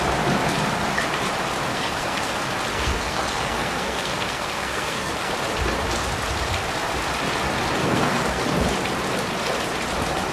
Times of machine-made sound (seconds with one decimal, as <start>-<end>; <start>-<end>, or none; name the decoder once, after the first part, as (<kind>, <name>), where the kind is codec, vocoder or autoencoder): 1.7-2.3 (codec, SNAC); 2.7-5.3; 7.8-8.4

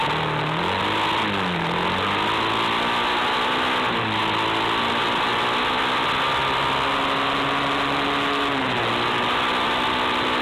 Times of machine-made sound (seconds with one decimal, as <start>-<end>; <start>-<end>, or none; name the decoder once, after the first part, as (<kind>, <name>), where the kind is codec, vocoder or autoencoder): none